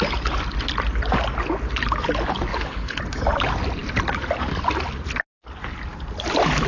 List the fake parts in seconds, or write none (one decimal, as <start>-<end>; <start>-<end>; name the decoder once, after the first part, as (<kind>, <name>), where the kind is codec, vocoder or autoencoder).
2.5-3.0 (codec, HILCodec)